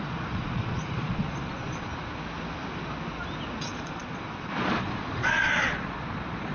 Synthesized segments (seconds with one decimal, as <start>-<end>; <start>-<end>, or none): 0.0-1.9; 3.6-6.5